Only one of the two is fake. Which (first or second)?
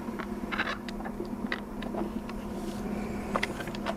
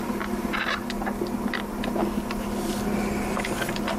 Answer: first